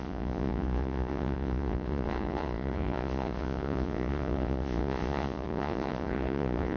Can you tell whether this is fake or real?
fake